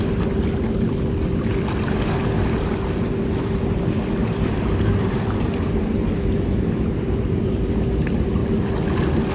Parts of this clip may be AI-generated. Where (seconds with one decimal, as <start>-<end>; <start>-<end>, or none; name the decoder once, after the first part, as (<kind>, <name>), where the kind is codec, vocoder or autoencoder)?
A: 4.2-7.7 (vocoder, BigVGAN v2)